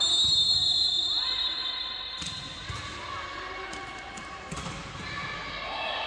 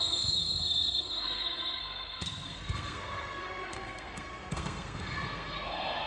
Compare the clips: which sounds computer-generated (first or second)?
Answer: second